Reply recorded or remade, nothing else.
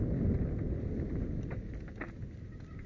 recorded